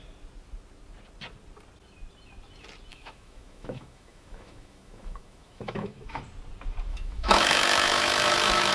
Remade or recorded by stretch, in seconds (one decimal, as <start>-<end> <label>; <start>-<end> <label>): 0.0-2.9 recorded; 2.9-6.2 remade; 6.2-6.9 recorded; 6.9-8.7 remade